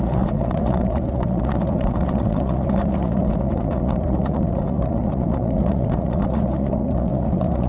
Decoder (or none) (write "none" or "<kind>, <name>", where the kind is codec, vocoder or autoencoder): vocoder, Vocos